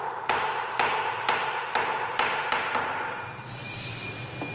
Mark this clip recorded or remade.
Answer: recorded